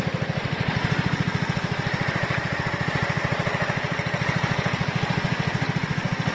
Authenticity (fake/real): real